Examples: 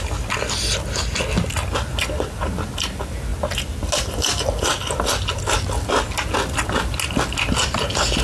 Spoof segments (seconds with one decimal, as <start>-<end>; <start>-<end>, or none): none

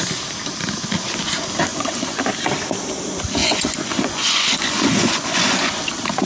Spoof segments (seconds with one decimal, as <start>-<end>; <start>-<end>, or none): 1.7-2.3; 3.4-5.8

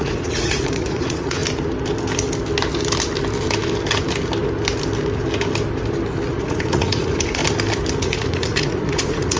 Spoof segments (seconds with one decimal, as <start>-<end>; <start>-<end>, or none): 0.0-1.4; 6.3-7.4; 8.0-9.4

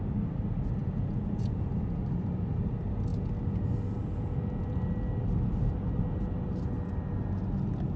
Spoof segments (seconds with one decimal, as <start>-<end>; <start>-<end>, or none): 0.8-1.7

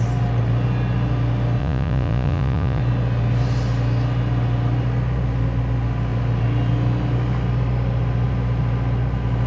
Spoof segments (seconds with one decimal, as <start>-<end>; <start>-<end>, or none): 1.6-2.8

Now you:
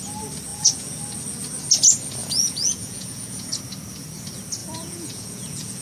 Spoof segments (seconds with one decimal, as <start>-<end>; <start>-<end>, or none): 0.5-1.0; 2.2-3.6; 4.6-5.8

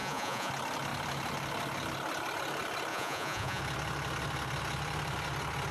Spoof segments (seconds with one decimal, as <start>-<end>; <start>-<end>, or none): 0.0-0.5; 2.9-3.6